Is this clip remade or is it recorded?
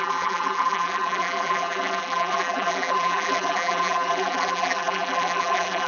remade